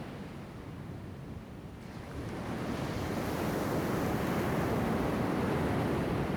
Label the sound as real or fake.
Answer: fake